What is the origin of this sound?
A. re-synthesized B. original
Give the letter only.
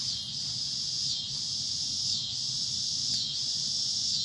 A